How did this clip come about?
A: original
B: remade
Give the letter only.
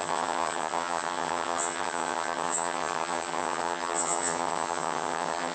B